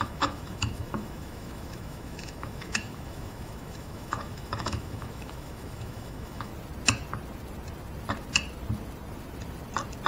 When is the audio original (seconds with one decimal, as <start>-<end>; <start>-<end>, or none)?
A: 6.5-10.1